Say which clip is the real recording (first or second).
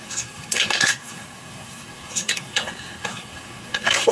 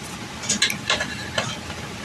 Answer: second